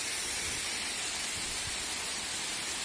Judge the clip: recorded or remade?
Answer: recorded